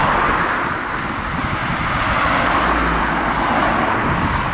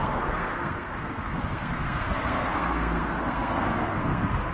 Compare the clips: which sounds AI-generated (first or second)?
second